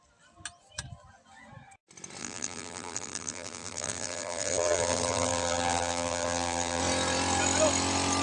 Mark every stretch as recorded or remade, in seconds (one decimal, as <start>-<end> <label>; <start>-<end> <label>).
0.0-2.2 recorded; 2.2-6.8 remade; 6.8-8.2 recorded